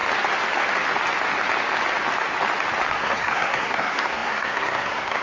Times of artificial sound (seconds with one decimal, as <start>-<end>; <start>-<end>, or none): 2.9-5.2

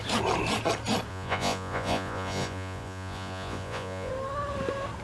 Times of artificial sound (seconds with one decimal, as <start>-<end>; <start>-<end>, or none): 1.1-4.1